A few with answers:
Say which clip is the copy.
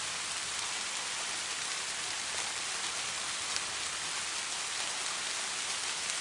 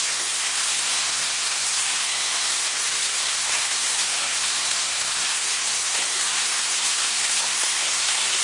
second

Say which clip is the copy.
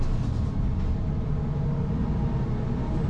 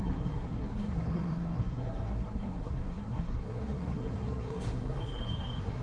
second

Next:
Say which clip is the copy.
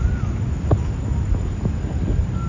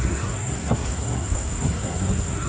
second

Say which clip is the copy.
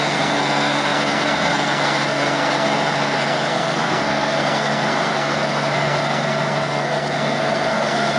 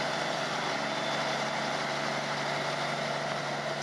first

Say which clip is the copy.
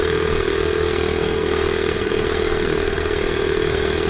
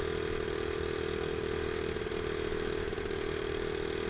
first